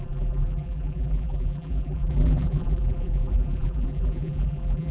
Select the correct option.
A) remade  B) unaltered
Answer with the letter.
A